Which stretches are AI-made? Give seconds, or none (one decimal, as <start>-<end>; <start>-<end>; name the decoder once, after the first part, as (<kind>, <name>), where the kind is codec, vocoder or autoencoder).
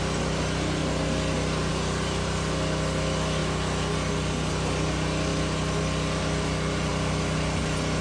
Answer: none